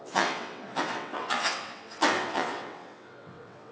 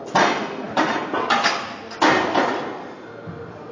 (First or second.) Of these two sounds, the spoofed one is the first